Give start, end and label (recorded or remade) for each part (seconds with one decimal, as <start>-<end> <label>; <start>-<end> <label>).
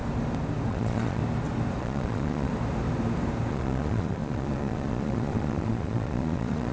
0.0-0.7 recorded; 0.7-1.2 remade; 1.2-1.8 recorded; 1.8-2.5 remade; 2.5-3.5 recorded; 3.5-6.7 remade